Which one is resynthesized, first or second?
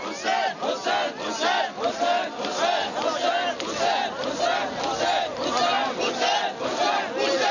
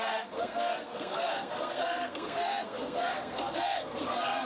second